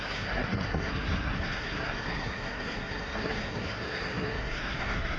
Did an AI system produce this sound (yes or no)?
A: yes